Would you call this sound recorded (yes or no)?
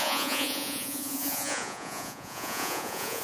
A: no